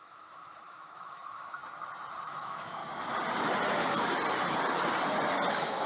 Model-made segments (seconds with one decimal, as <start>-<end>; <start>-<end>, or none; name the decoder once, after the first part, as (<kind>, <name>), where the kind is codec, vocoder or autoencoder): 0.0-1.6 (autoencoder, DAC-VAE); 2.2-2.8; 5.5-5.9